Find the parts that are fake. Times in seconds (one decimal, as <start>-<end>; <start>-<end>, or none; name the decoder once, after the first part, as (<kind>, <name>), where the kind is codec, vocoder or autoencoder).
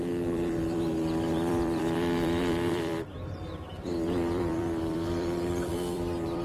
0.0-6.4 (vocoder, BigVGAN v2)